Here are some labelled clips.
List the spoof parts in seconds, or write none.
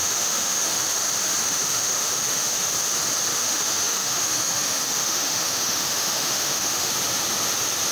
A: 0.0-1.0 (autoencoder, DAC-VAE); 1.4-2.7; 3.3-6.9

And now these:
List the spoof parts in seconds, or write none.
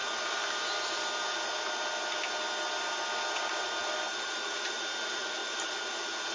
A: 3.8-5.4 (vocoder, BigVGAN v2)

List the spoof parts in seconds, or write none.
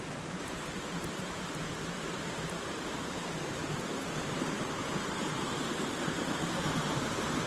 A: 0.0-3.6 (vocoder, BigVGAN v2); 4.5-7.5